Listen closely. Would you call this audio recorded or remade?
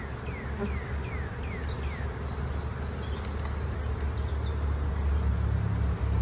recorded